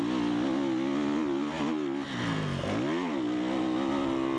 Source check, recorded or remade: recorded